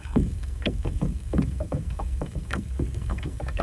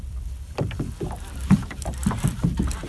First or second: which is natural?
second